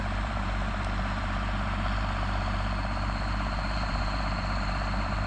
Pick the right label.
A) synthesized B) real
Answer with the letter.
A